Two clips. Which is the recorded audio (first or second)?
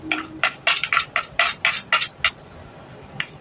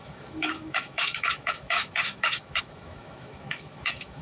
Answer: first